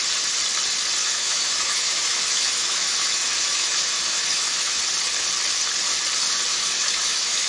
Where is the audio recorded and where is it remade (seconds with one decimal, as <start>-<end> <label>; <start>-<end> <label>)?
0.0-1.0 recorded; 1.0-4.8 remade; 4.8-6.5 recorded; 6.5-7.5 remade